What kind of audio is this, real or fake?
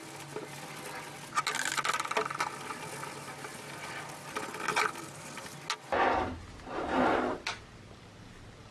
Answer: real